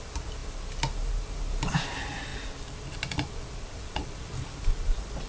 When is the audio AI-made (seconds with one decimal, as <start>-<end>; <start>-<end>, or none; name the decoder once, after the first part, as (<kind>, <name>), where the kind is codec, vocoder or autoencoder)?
2.3-5.3 (vocoder, BigVGAN v2)